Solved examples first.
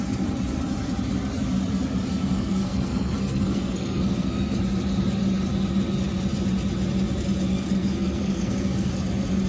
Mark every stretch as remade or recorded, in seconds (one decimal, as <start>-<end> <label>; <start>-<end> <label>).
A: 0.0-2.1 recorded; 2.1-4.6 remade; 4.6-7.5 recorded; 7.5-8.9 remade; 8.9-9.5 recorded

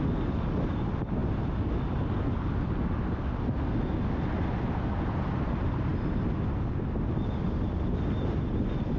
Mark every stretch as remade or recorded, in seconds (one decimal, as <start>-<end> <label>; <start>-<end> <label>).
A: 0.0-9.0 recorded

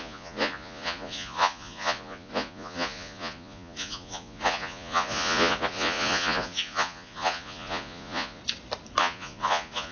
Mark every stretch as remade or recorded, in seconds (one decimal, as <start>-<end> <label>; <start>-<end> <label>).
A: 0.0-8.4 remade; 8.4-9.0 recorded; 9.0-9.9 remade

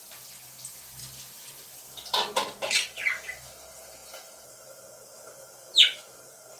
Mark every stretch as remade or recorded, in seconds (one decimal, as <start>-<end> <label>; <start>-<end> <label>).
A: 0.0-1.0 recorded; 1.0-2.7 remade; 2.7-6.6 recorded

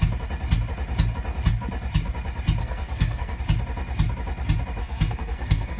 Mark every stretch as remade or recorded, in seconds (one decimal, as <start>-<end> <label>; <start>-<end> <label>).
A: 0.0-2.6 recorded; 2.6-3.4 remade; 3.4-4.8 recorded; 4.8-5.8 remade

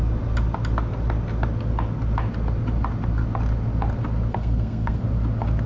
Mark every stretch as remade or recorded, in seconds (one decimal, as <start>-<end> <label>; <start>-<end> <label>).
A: 0.0-4.3 recorded; 4.3-5.0 remade; 5.0-5.7 recorded

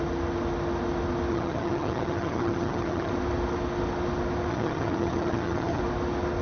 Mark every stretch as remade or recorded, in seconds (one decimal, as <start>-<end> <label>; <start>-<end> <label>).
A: 0.0-1.3 recorded; 1.3-3.1 remade; 3.1-4.5 recorded; 4.5-5.8 remade; 5.8-6.4 recorded

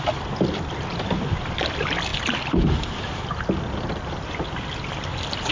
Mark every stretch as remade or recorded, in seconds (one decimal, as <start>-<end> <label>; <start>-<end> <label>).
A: 0.0-2.1 remade; 2.1-3.2 recorded; 3.2-5.5 remade